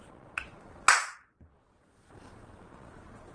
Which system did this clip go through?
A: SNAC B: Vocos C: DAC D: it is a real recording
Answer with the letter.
B